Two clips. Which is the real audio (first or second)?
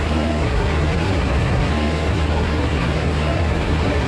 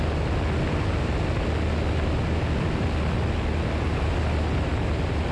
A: second